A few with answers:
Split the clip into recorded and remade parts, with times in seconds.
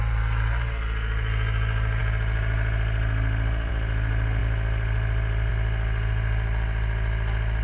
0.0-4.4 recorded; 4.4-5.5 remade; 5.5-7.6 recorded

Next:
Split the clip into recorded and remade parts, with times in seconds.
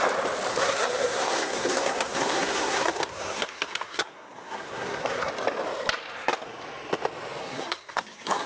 0.0-0.5 recorded; 0.5-5.3 remade; 5.3-7.4 recorded; 7.4-8.5 remade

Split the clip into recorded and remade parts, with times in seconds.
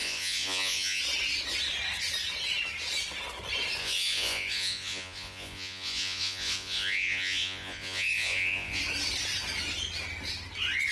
0.0-1.0 remade; 1.0-3.8 recorded; 3.8-8.8 remade; 8.8-10.9 recorded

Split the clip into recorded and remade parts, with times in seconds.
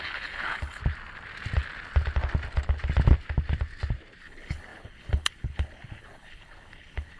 0.0-0.8 remade; 0.8-4.2 recorded; 4.2-7.2 remade